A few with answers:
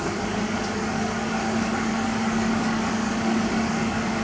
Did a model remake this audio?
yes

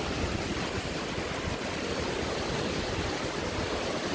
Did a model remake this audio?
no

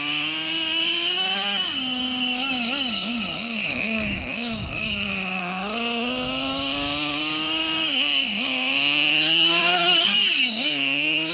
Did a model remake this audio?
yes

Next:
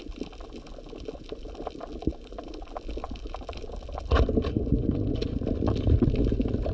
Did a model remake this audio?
no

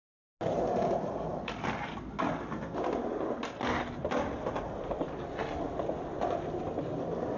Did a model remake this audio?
no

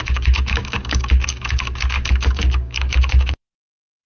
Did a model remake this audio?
yes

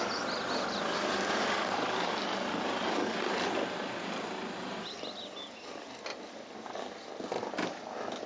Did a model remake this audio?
no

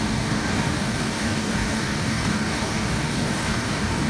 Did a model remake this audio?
yes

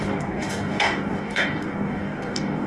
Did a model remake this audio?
yes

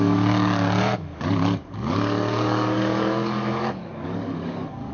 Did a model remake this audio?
yes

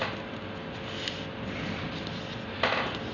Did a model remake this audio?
no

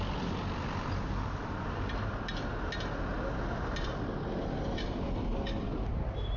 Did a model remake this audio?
no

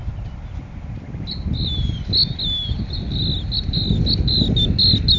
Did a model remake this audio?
no